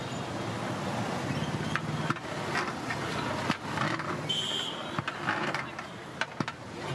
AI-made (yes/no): no